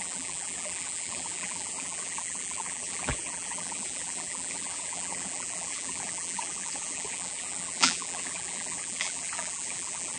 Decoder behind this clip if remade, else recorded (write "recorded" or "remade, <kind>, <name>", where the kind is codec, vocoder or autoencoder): remade, vocoder, BigVGAN v2